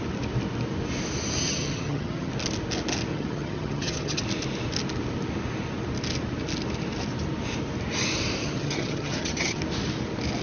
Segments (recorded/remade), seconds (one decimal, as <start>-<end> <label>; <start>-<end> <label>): 0.0-1.4 recorded; 1.4-2.3 remade; 2.3-3.1 recorded; 3.1-4.2 remade; 4.2-8.4 recorded; 8.4-9.6 remade; 9.6-10.4 recorded